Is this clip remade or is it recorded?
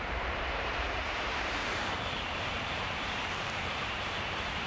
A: remade